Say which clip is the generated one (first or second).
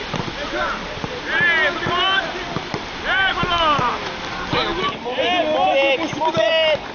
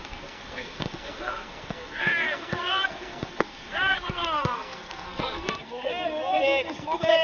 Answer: second